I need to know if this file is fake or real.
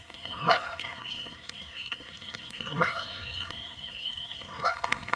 fake